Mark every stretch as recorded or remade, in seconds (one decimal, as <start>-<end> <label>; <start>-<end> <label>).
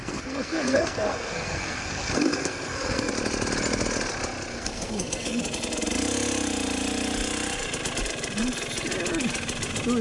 0.0-3.1 remade; 3.1-4.5 recorded; 4.5-5.4 remade; 5.4-10.0 recorded